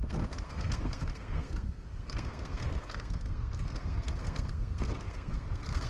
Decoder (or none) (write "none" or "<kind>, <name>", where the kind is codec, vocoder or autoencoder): codec, SNAC